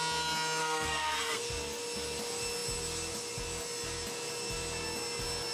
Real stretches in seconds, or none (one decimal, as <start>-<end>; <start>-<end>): 0.0-0.6; 1.4-5.5